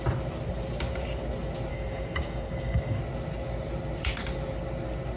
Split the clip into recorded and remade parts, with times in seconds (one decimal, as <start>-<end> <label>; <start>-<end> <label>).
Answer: 0.0-1.7 recorded; 1.7-3.0 remade; 3.0-5.2 recorded